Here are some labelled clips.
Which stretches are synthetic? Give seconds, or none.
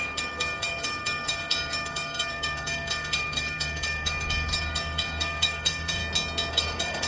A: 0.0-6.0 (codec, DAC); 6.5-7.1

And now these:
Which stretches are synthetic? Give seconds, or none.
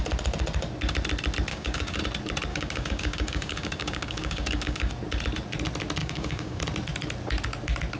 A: 1.5-2.0 (codec, DAC); 2.5-4.9; 6.0-6.6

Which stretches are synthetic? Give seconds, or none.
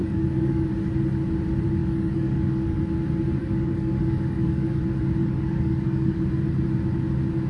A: 0.0-0.7 (codec, DAC); 1.8-2.8; 3.4-4.8; 5.2-6.2